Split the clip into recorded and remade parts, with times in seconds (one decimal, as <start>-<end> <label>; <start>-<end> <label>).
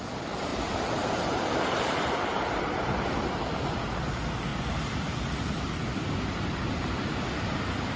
0.0-0.5 recorded; 0.5-3.7 remade; 3.7-8.0 recorded